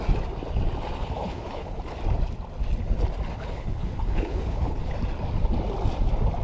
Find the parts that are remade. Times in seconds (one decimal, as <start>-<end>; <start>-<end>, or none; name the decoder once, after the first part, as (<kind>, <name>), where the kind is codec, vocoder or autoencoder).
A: 1.0-1.8 (codec, HILCodec); 3.3-4.9